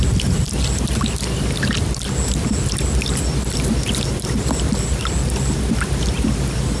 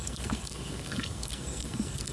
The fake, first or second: second